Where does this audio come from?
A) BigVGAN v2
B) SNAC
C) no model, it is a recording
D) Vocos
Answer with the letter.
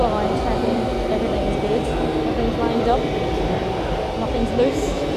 C